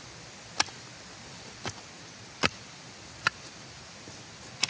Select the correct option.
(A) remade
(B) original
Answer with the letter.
B